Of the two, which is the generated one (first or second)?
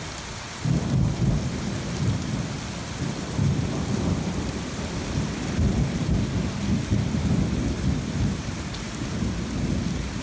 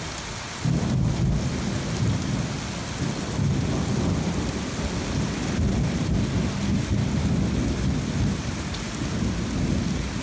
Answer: first